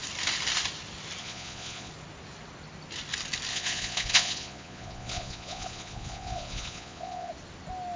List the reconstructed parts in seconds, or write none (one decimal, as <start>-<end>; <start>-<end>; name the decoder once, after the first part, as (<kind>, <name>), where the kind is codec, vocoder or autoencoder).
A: 1.2-1.9 (vocoder, Vocos); 3.5-7.3